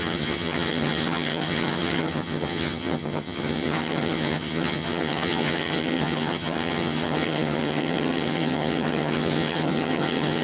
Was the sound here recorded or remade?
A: remade